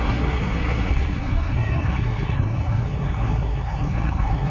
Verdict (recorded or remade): remade